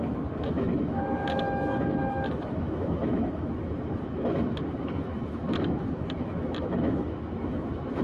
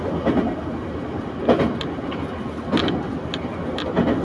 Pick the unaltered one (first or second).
second